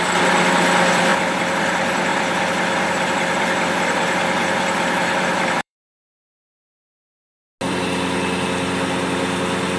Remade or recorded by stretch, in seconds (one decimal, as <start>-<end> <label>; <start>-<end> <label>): 0.0-2.1 recorded; 2.1-7.0 remade; 7.0-9.8 recorded

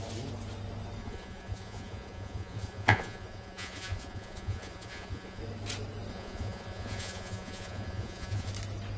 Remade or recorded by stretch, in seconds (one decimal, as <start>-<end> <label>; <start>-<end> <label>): 0.0-1.0 recorded; 1.0-5.4 remade; 5.4-6.1 recorded; 6.1-8.5 remade; 8.5-9.0 recorded

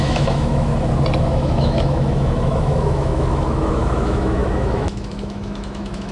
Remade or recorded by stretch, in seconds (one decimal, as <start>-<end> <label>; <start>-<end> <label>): 0.0-0.7 remade; 0.7-1.2 recorded; 1.2-6.1 remade

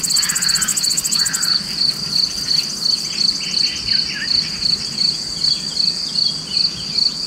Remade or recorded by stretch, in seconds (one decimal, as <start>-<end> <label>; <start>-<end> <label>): 0.0-7.3 recorded

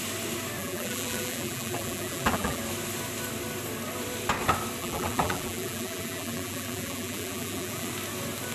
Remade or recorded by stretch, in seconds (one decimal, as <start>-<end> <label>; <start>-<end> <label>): 0.0-0.6 recorded; 0.6-2.6 remade; 2.6-4.8 recorded; 4.8-7.9 remade; 7.9-8.5 recorded

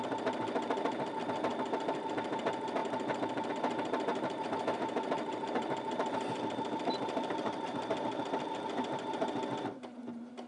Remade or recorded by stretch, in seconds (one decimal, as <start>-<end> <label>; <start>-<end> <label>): 0.0-1.5 recorded; 1.5-2.4 remade; 2.4-2.8 recorded; 2.8-3.5 remade; 3.5-4.1 recorded; 4.1-8.2 remade; 8.2-10.5 recorded

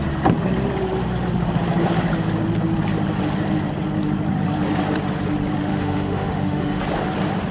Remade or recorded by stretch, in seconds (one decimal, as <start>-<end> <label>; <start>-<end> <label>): 0.0-5.7 recorded; 5.7-6.8 remade; 6.8-7.5 recorded

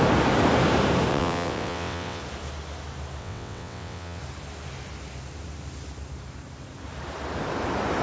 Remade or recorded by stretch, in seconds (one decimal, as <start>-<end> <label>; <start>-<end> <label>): 0.0-1.1 recorded; 1.1-2.2 remade; 2.2-3.2 recorded; 3.2-4.2 remade; 4.2-8.0 recorded